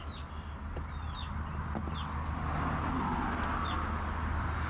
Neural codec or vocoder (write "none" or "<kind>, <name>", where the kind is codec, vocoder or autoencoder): none